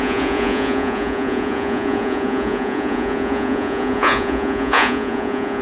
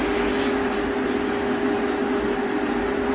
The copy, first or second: first